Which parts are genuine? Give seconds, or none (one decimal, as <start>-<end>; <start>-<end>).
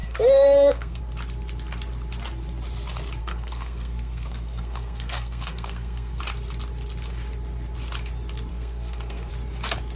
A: 1.0-3.2; 6.2-8.5; 9.3-10.0